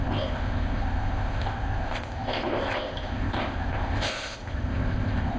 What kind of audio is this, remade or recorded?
remade